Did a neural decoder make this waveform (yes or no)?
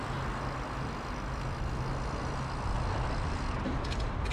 no